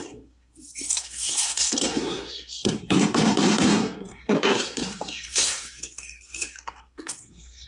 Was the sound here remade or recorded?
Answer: remade